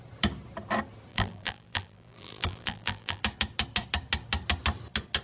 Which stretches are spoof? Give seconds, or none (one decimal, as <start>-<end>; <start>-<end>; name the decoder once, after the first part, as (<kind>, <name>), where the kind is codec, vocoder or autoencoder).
1.1-3.2 (vocoder, BigVGAN v2)